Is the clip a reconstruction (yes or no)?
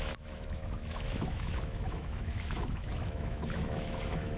yes